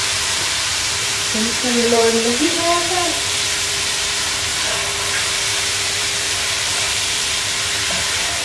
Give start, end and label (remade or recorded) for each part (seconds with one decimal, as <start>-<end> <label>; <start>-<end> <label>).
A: 0.0-4.5 remade; 4.5-5.2 recorded; 5.2-8.4 remade

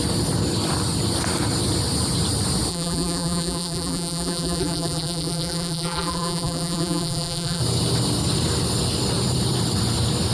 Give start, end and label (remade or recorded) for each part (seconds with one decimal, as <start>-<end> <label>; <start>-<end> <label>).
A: 0.0-2.7 recorded; 2.7-7.6 remade; 7.6-10.3 recorded

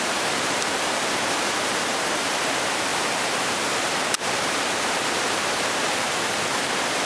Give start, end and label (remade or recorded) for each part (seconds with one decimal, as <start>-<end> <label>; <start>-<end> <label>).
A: 0.0-7.1 remade